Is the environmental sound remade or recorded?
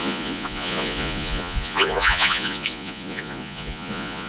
remade